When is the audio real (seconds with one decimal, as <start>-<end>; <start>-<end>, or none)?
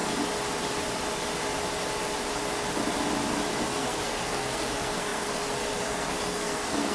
0.0-3.6